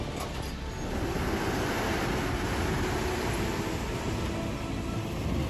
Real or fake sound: real